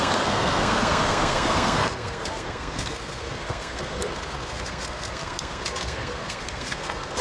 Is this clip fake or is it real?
fake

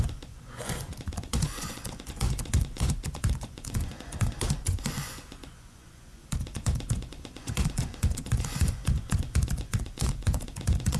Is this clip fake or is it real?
fake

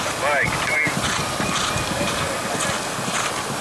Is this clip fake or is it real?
real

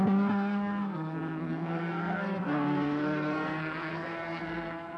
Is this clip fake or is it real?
fake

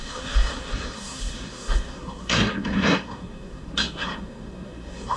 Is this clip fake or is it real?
fake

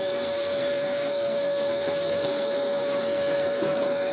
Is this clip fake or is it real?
fake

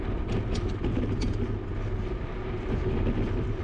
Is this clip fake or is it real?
real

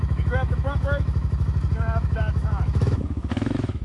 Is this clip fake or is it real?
fake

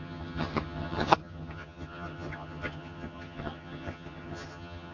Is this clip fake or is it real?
fake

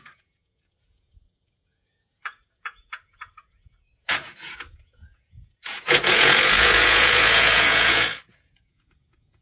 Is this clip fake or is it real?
fake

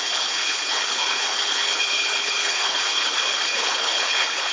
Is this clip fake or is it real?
fake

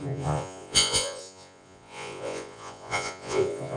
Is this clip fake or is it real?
fake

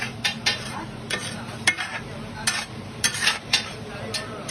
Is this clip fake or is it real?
fake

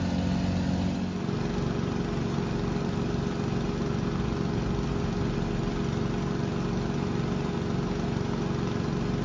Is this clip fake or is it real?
real